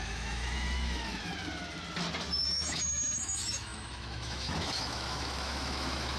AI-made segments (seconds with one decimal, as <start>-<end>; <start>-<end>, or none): 0.0-1.3; 2.4-6.2